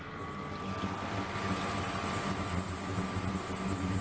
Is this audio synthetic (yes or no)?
no